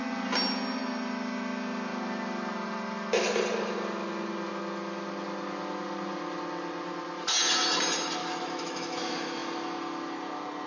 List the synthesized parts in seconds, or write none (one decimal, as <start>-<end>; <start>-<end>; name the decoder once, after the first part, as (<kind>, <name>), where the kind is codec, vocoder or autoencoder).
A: 8.2-9.0 (autoencoder, DAC-VAE)